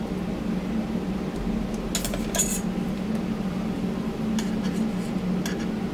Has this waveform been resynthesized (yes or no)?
no